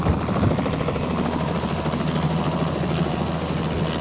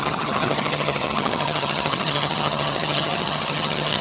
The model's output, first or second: second